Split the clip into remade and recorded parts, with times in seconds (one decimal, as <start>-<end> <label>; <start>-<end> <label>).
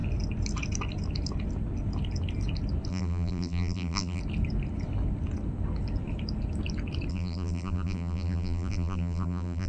0.0-2.9 recorded; 2.9-4.2 remade; 4.2-7.1 recorded; 7.1-9.7 remade